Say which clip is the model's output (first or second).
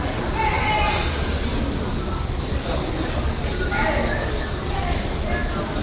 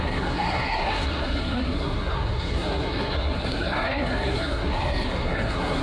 second